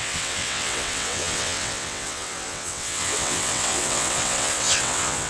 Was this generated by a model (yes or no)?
yes